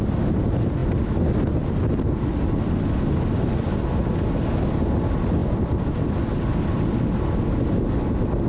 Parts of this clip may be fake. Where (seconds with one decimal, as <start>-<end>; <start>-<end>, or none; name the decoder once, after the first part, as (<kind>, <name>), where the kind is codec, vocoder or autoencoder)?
none